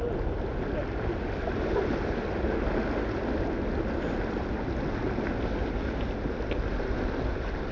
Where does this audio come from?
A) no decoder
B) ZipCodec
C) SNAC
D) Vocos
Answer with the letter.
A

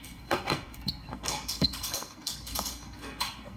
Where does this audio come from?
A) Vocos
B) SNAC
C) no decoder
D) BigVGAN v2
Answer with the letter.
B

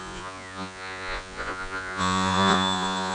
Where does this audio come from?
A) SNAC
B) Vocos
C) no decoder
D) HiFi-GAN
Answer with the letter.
B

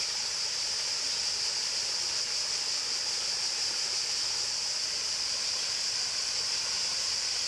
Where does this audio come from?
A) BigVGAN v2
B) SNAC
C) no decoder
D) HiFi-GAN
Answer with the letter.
C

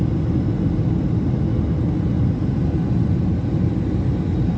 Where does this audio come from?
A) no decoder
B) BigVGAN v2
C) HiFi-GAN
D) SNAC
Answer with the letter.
A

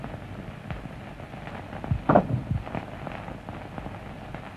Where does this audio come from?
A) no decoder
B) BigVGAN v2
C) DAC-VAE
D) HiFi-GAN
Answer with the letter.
A